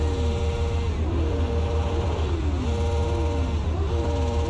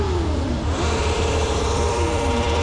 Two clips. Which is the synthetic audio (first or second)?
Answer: second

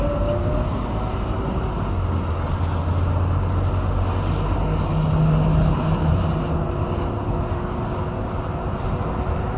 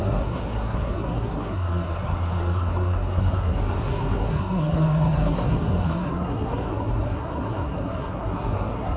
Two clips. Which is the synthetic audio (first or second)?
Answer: second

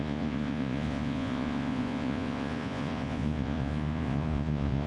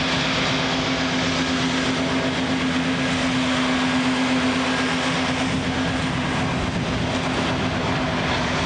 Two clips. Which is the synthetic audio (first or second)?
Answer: first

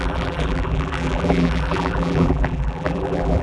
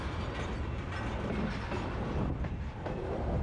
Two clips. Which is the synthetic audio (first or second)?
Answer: first